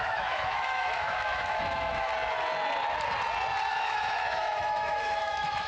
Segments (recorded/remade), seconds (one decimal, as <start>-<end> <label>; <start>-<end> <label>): 0.0-2.1 remade; 2.1-3.7 recorded; 3.7-5.7 remade